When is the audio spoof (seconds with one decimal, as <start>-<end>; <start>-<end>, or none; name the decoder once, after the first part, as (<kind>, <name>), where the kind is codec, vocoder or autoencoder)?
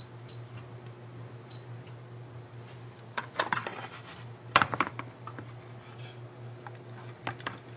none